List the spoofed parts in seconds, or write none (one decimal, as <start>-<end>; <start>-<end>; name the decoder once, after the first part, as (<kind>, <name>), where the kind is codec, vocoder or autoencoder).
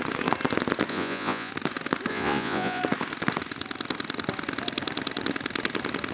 0.9-1.5 (vocoder, Vocos); 2.1-2.8